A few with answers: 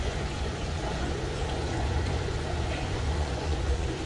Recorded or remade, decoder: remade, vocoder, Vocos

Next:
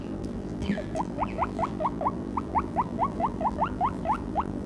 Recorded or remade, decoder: remade, vocoder, BigVGAN v2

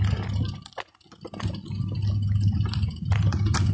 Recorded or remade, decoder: recorded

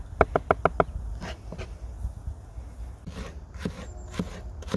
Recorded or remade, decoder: recorded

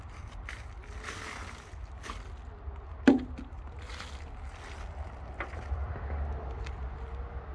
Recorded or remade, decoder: recorded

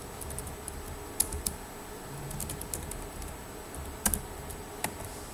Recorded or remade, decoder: recorded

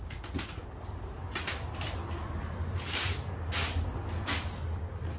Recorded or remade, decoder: recorded